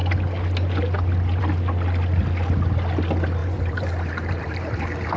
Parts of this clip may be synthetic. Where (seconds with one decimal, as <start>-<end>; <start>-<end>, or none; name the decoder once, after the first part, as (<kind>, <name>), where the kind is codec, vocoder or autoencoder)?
3.4-5.2 (vocoder, BigVGAN v2)

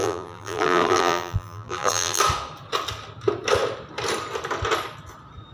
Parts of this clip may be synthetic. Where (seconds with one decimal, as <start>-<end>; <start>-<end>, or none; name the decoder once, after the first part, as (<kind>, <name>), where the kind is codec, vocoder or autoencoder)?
0.0-2.2 (vocoder, BigVGAN v2)

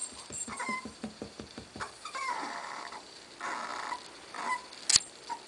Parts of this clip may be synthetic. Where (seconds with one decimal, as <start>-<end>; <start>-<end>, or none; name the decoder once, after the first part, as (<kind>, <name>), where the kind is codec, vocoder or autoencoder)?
0.0-3.3 (vocoder, BigVGAN v2)

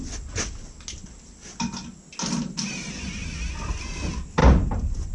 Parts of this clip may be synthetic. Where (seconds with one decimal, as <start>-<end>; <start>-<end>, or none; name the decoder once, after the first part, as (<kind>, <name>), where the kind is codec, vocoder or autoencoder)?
4.4-5.1 (vocoder, BigVGAN v2)

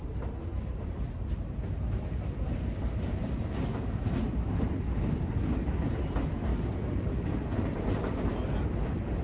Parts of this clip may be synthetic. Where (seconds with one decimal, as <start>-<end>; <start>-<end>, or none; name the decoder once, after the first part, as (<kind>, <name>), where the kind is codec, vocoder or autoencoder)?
6.5-7.1 (vocoder, BigVGAN v2); 7.5-8.0

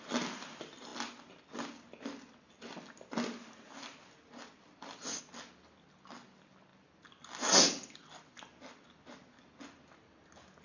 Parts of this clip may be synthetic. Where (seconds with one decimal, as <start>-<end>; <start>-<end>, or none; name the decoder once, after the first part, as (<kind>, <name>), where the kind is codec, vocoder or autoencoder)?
none

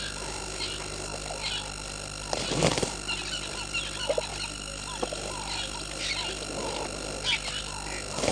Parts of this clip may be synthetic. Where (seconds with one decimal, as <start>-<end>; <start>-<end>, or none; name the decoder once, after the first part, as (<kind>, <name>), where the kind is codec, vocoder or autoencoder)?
4.3-6.0 (vocoder, BigVGAN v2)

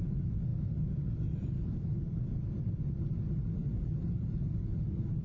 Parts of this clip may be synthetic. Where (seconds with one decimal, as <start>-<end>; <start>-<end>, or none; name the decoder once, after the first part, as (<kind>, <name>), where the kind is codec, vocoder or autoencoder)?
0.5-2.7 (vocoder, BigVGAN v2)